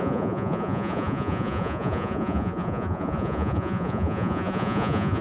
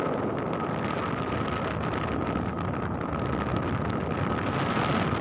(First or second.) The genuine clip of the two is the second